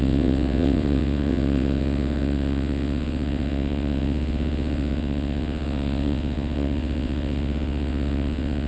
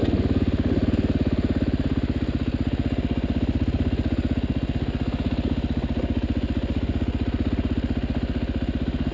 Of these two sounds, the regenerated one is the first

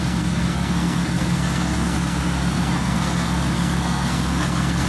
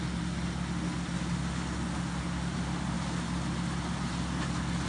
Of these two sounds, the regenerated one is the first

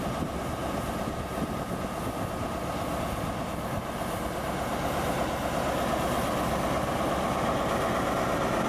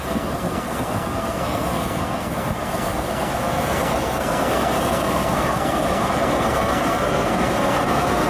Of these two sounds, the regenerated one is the second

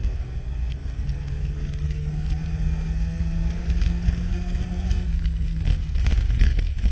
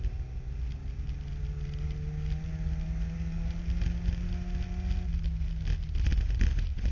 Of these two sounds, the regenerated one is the first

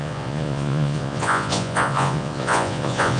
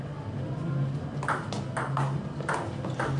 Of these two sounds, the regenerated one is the first